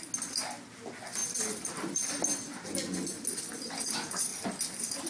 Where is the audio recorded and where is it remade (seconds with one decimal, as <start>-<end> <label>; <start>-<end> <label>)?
0.0-5.1 recorded